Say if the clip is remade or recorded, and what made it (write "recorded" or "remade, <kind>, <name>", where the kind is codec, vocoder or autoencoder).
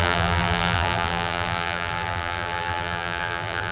remade, vocoder, BigVGAN v2